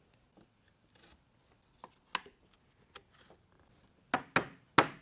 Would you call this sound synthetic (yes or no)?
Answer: no